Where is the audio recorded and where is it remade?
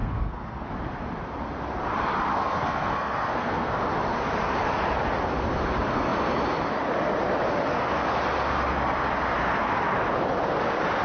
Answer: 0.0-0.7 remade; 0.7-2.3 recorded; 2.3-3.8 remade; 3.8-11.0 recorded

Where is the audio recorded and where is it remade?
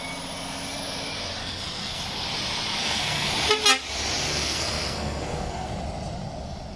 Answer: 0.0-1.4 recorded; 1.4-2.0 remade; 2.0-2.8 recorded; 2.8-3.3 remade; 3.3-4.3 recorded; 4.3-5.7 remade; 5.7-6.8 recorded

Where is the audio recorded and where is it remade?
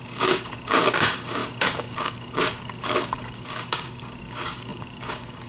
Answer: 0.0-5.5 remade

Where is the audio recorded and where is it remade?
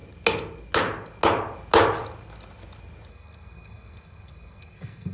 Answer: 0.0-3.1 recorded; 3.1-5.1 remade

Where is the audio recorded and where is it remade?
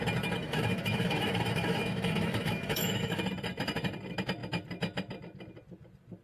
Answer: 0.0-0.4 recorded; 0.4-3.2 remade; 3.2-6.2 recorded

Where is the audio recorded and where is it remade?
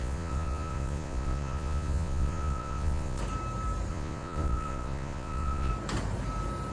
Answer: 0.0-3.2 remade; 3.2-3.9 recorded; 3.9-5.7 remade; 5.7-6.7 recorded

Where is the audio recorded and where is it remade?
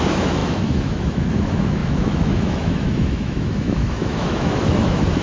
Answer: 0.0-5.2 remade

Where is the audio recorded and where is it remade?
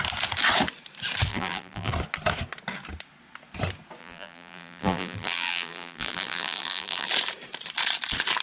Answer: 0.0-1.3 recorded; 1.3-1.9 remade; 1.9-4.0 recorded; 4.0-7.1 remade; 7.1-8.4 recorded